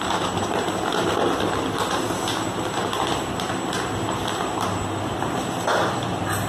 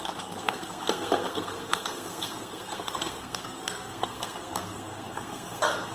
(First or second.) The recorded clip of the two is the first